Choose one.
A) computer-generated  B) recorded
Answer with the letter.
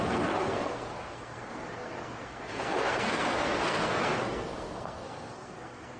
A